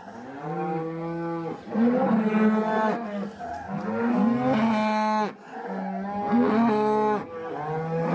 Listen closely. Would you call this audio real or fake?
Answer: real